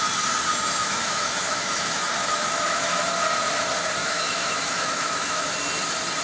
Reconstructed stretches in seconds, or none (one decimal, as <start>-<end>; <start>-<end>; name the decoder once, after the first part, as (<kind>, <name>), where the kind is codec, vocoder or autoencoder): 0.8-3.0 (autoencoder, DAC-VAE); 4.0-5.5